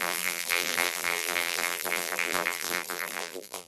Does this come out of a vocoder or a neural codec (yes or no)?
yes